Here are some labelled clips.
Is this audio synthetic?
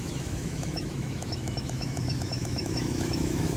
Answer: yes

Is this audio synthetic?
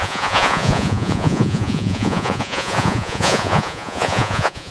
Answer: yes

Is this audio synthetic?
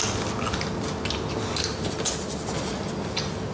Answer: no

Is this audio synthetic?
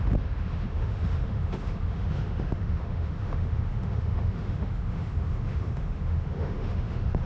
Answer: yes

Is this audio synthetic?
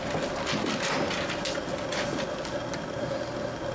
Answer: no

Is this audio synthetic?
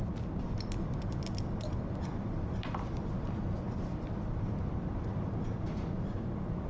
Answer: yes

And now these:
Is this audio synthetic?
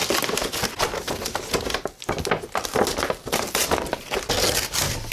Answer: no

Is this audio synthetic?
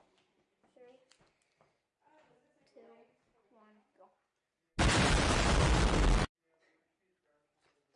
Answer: no